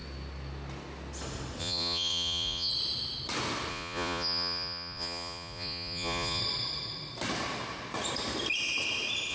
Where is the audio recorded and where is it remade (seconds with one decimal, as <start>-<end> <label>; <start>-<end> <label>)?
0.0-1.6 recorded; 1.6-2.7 remade; 2.7-3.7 recorded; 3.7-6.4 remade; 6.4-9.3 recorded